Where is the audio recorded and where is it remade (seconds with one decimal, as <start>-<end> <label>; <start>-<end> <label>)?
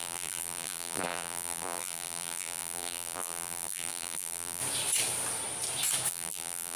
0.0-4.6 remade; 4.6-6.1 recorded; 6.1-6.8 remade